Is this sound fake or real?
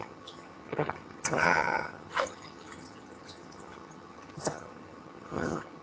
fake